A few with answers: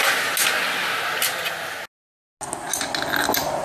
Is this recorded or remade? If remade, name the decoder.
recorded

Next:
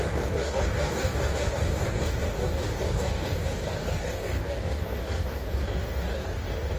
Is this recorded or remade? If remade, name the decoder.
remade, codec, DAC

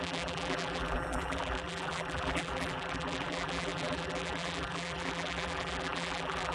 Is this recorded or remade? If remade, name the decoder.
remade, vocoder, BigVGAN v2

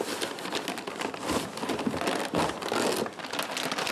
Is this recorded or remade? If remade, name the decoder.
recorded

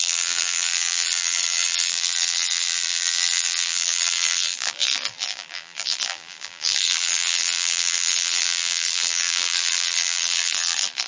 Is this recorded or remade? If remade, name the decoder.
remade, vocoder, BigVGAN v2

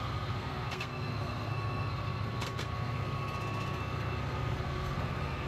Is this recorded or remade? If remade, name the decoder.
remade, codec, SNAC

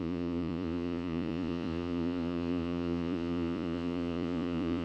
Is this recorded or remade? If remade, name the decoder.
remade, vocoder, Vocos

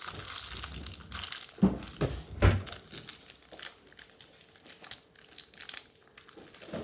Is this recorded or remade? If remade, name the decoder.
recorded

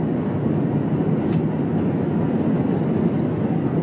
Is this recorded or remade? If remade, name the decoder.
recorded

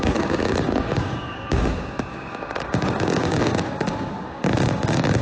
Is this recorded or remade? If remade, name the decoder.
remade, codec, DAC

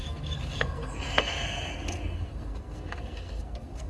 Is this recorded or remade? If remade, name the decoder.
remade, codec, SNAC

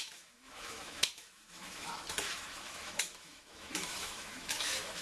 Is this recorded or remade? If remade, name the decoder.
remade, autoencoder, DAC-VAE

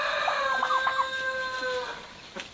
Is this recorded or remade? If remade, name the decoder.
recorded